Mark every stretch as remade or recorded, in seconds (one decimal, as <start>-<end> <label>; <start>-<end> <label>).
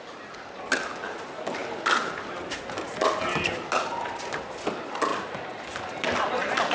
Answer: 0.0-6.7 recorded